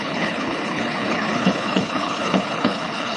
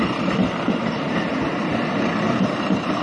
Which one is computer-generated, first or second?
first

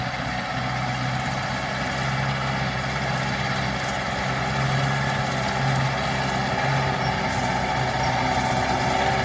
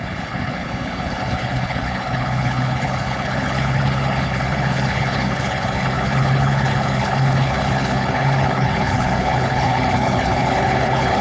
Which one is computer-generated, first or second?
second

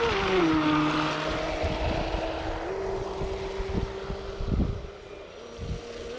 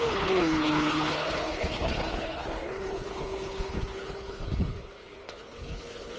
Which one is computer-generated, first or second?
second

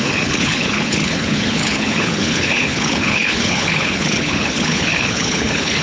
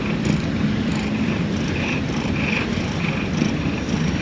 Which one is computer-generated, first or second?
first